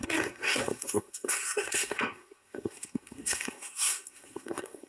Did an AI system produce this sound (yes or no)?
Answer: yes